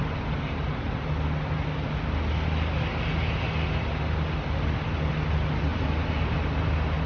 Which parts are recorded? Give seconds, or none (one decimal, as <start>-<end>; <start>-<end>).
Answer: 0.0-7.1